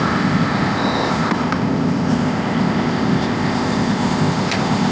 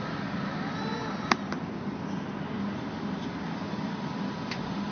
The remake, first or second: first